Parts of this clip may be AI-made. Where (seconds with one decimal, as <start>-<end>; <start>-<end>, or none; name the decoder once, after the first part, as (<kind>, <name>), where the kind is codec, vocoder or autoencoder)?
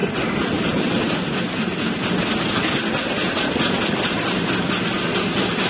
none